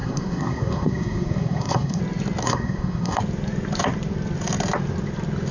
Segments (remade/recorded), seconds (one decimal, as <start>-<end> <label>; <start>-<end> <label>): 0.0-2.0 remade; 2.0-2.4 recorded; 2.4-3.2 remade; 3.2-5.5 recorded